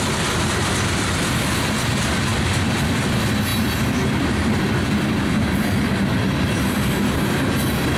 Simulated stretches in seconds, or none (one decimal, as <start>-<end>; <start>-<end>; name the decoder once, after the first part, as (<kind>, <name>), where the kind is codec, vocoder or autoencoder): none